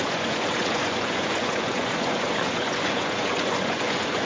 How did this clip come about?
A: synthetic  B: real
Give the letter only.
A